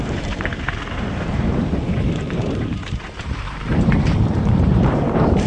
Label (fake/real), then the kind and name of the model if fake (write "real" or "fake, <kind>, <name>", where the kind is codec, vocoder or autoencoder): fake, vocoder, BigVGAN v2